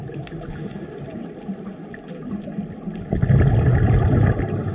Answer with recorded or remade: recorded